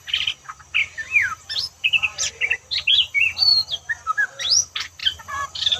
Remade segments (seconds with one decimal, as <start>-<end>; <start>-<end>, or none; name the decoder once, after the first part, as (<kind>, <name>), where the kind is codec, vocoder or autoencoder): 0.8-2.3 (vocoder, BigVGAN v2); 5.0-5.8